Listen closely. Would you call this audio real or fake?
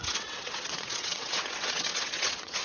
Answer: fake